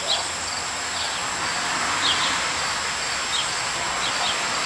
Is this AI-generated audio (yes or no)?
no